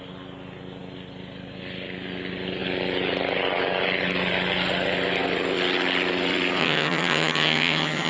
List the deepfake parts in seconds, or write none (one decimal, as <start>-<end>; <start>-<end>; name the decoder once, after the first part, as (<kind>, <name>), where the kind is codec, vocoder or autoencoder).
6.6-8.1 (vocoder, HiFi-GAN)